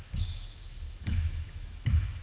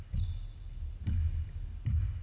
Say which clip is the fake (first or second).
first